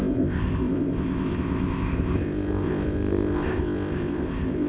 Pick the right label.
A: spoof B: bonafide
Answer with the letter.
A